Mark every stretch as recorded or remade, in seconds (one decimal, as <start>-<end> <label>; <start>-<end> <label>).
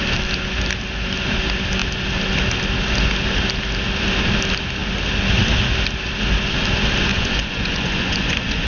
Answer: 0.0-7.1 recorded; 7.1-8.7 remade